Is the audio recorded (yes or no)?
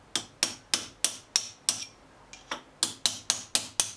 yes